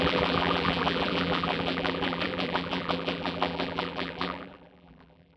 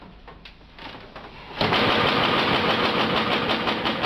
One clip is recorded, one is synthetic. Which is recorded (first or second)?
second